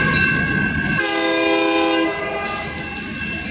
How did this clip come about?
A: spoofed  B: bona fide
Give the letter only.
B